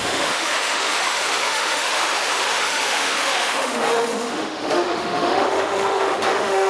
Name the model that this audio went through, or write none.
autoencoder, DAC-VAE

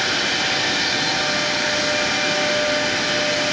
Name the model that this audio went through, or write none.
none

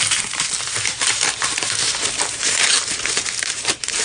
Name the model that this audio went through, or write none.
vocoder, BigVGAN v2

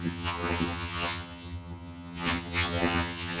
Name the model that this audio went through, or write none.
vocoder, HiFi-GAN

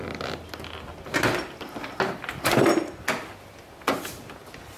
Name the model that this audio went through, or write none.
none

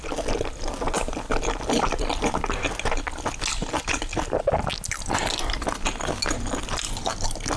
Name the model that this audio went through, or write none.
none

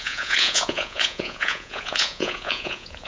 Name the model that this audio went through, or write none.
vocoder, Vocos